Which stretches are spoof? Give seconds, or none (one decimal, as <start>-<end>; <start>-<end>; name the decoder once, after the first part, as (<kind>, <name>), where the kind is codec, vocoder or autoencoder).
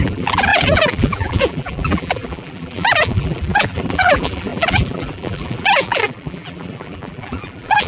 0.0-7.9 (vocoder, BigVGAN v2)